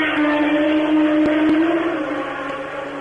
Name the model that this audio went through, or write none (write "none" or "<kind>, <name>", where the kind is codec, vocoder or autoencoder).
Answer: none